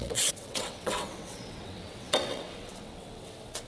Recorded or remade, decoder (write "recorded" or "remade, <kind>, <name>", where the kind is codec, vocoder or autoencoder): remade, vocoder, WaveNeXt